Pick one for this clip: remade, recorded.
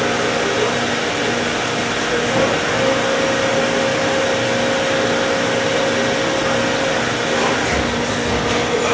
recorded